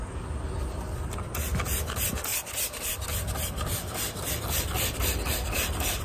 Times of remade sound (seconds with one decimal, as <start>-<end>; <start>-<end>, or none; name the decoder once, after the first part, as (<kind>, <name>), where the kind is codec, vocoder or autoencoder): 2.3-6.0 (vocoder, BigVGAN v2)